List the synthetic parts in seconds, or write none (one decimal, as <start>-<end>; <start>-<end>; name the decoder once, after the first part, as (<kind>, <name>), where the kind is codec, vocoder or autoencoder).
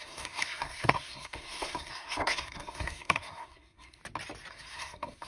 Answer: 0.0-4.0 (codec, SNAC); 4.5-5.3